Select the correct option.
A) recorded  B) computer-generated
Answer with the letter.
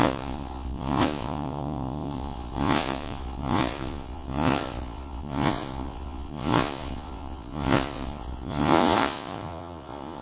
B